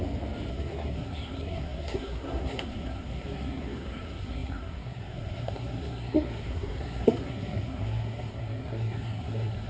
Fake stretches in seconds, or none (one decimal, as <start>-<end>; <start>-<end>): 0.5-9.7